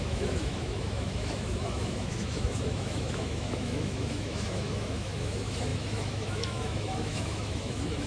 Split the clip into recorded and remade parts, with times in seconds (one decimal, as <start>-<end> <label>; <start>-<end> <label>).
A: 0.0-8.1 remade